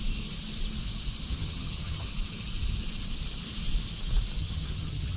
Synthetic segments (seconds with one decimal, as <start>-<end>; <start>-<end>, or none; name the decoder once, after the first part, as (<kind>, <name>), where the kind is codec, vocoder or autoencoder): 1.3-2.1 (vocoder, HiFi-GAN); 4.4-5.2

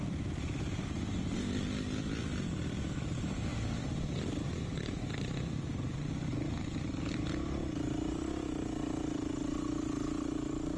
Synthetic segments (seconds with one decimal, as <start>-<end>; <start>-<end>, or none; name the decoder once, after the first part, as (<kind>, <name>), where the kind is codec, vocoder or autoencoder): 3.5-4.0 (vocoder, BigVGAN v2)

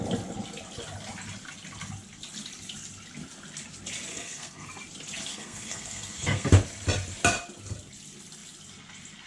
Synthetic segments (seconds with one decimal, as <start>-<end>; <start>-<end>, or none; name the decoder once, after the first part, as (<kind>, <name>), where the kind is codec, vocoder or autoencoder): 4.1-4.7 (codec, SNAC); 5.3-6.5